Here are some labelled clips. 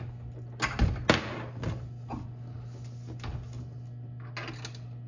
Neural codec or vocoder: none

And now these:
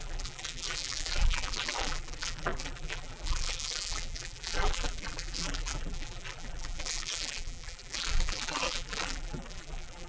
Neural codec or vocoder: vocoder, BigVGAN v2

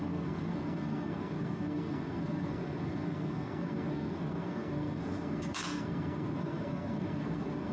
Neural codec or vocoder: codec, SNAC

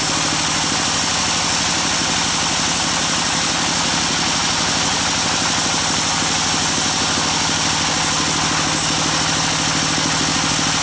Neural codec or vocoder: none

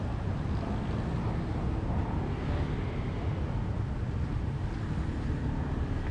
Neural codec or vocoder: none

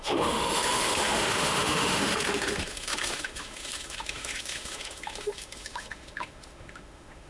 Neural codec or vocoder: autoencoder, DAC-VAE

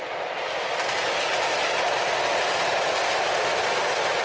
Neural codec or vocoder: none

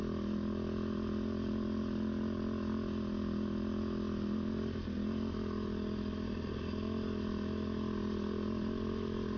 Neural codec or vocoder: none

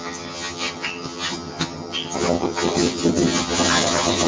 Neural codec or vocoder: vocoder, HiFi-GAN